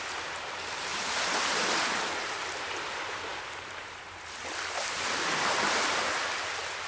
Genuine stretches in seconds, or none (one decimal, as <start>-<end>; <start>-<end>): 0.0-6.9